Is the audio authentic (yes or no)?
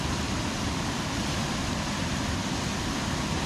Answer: yes